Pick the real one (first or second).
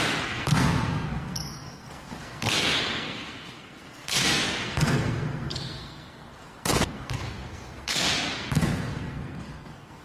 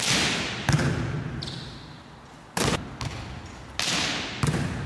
second